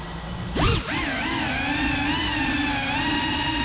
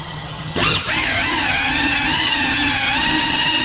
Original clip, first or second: first